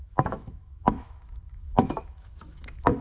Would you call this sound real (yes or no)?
no